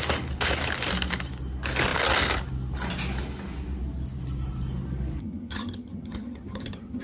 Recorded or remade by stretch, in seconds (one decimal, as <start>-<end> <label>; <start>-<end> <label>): 0.0-5.2 recorded; 5.2-7.0 remade